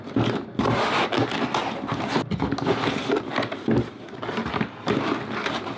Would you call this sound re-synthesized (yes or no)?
no